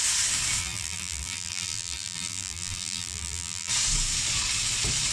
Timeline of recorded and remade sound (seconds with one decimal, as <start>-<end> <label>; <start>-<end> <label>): 0.0-0.6 recorded; 0.6-3.7 remade; 3.7-5.1 recorded

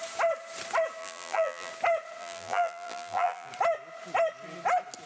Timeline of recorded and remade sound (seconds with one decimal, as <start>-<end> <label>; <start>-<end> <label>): 0.0-1.0 recorded; 1.0-1.7 remade; 1.7-2.2 recorded; 2.2-3.5 remade; 3.5-5.1 recorded